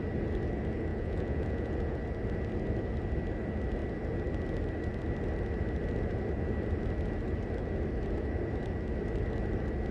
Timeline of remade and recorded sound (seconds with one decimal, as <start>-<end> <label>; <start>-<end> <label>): 0.0-0.9 recorded; 0.9-2.0 remade; 2.0-9.9 recorded